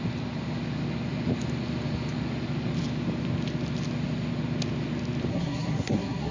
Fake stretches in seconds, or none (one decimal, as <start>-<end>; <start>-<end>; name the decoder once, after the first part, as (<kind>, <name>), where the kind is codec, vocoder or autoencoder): 5.3-6.3 (codec, SNAC)